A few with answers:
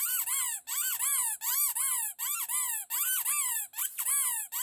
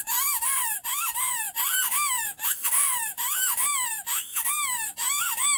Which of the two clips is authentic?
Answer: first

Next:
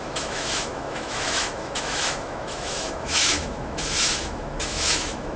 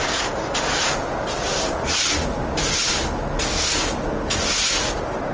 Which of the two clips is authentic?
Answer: second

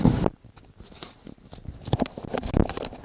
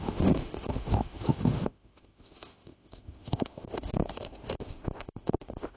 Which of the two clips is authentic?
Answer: first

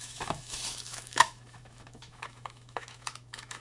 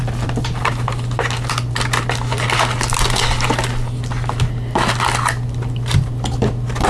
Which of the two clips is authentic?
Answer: second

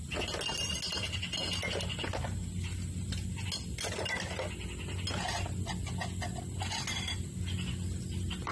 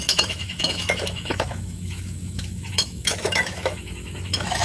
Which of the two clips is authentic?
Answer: first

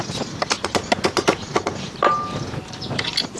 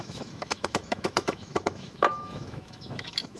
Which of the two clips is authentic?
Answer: first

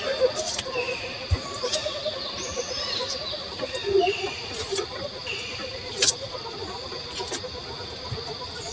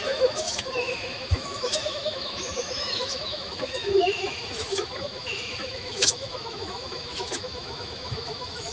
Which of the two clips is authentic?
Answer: first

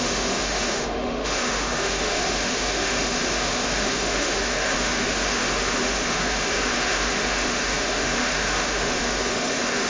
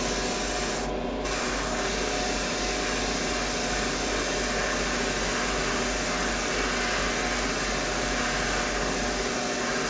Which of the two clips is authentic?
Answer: second